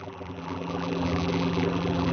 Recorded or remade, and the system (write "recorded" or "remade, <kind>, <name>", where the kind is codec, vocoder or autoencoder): remade, vocoder, BigVGAN v2